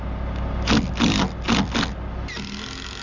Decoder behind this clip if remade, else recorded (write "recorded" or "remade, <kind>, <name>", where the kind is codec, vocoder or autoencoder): recorded